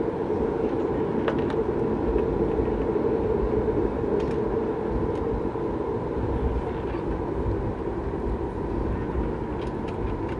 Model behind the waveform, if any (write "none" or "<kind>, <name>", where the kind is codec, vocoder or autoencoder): none